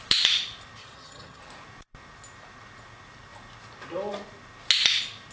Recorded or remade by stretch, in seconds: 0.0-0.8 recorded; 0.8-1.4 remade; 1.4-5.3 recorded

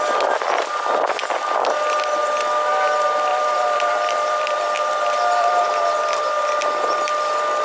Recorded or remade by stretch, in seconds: 0.0-3.3 recorded; 3.3-6.3 remade; 6.3-7.6 recorded